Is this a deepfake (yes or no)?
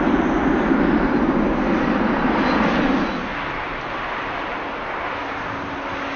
no